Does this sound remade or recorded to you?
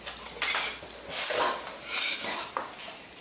recorded